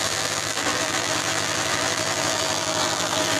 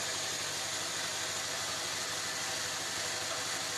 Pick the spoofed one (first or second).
first